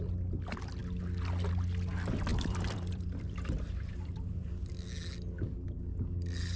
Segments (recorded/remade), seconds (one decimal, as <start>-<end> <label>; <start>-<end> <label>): 0.0-2.3 recorded; 2.3-4.7 remade; 4.7-6.6 recorded